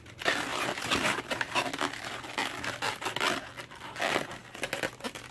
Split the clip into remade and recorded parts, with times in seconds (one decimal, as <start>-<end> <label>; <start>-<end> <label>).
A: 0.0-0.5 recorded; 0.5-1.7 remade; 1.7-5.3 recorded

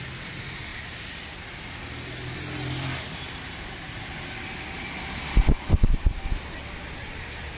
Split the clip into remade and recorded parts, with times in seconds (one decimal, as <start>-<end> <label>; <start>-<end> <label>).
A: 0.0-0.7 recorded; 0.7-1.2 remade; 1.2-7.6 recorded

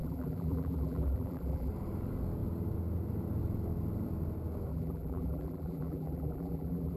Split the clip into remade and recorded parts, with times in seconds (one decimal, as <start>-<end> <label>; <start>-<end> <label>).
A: 0.0-1.7 remade; 1.7-4.7 recorded; 4.7-7.0 remade

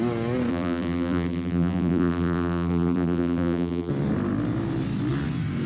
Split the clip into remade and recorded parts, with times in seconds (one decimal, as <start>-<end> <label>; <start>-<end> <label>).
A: 0.0-0.5 recorded; 0.5-3.9 remade; 3.9-5.7 recorded